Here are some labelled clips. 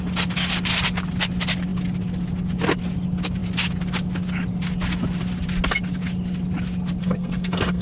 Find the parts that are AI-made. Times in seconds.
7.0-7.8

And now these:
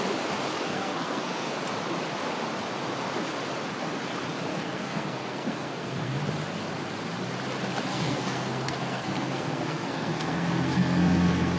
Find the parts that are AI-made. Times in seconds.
0.5-1.6; 4.5-6.2; 7.9-11.6

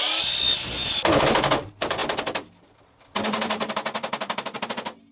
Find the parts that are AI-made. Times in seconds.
none